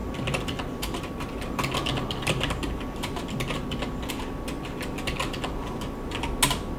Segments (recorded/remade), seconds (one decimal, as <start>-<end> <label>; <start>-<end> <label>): 0.0-6.8 recorded